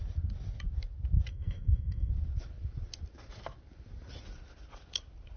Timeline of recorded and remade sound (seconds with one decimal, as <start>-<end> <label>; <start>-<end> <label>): 0.0-1.3 recorded; 1.3-2.1 remade; 2.1-5.4 recorded